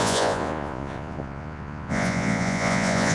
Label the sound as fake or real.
fake